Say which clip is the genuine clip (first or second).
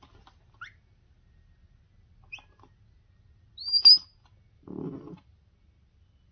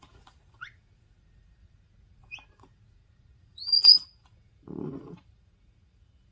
first